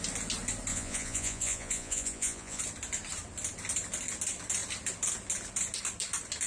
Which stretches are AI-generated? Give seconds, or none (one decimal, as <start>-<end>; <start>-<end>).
0.7-2.6